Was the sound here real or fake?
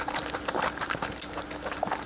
real